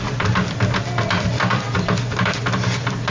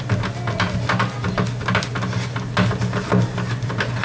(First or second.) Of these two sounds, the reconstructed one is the first